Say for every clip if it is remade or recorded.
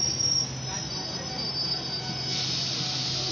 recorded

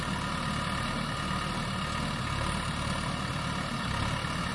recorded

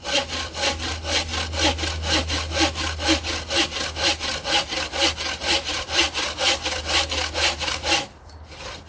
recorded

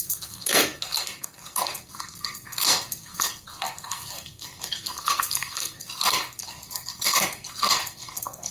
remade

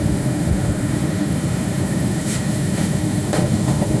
remade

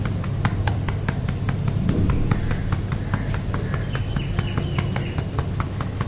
recorded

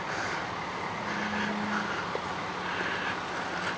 recorded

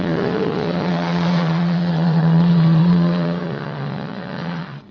remade